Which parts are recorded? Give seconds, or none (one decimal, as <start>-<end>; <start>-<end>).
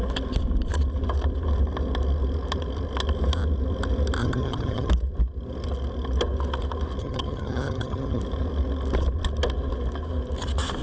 0.0-4.2; 4.9-7.0; 8.2-10.8